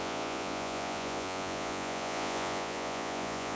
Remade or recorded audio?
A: remade